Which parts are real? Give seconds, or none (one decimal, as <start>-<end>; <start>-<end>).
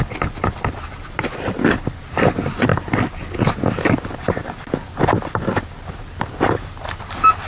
0.0-7.5